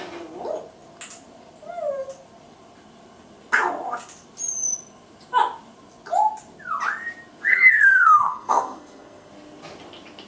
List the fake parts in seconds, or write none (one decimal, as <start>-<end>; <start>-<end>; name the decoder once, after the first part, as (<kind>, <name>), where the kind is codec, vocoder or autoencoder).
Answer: 7.5-9.3 (codec, SNAC)